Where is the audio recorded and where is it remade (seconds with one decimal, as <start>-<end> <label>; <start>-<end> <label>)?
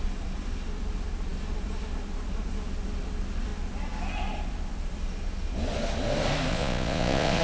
0.0-6.5 recorded; 6.5-7.4 remade